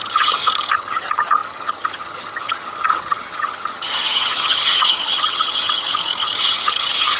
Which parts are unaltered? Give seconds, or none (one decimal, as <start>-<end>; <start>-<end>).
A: none